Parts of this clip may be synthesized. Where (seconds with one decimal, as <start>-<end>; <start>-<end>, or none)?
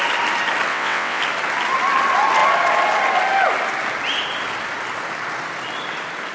0.7-1.2